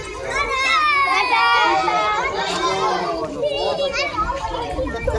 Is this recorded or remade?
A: recorded